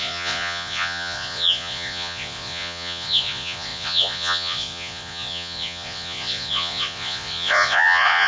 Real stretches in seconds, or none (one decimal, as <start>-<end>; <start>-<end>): none